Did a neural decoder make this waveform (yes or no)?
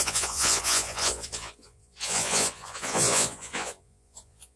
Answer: yes